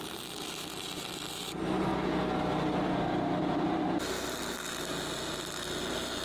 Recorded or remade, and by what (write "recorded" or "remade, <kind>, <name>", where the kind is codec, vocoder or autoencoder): recorded